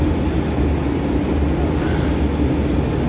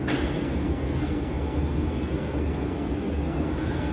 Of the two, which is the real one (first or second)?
first